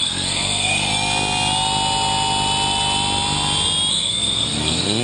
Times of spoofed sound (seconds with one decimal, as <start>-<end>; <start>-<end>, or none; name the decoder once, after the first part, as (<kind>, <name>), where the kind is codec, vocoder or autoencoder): 0.0-0.9 (codec, SNAC); 3.9-5.0